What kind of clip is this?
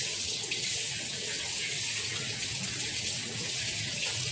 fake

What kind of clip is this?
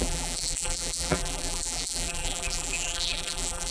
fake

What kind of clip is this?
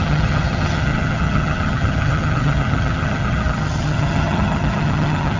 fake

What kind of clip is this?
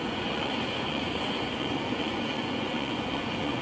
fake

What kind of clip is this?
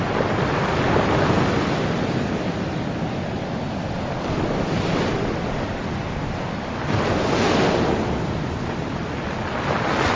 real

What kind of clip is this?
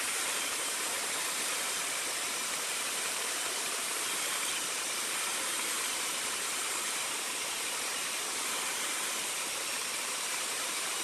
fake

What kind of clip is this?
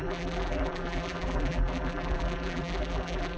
fake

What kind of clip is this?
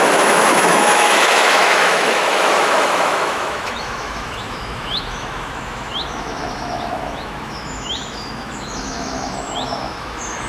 fake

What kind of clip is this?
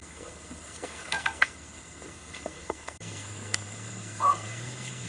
fake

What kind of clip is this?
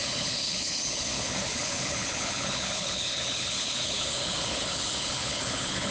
fake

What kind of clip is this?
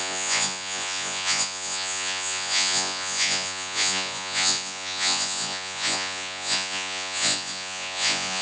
fake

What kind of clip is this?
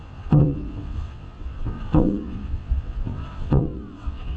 fake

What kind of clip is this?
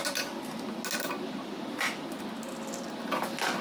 real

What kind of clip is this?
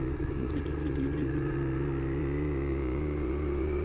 fake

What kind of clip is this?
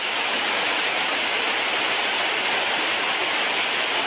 real